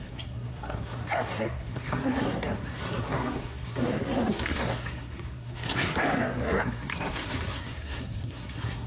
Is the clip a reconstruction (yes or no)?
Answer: yes